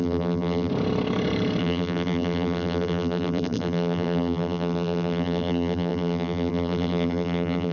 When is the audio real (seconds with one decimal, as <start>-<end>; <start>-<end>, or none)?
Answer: 0.7-1.6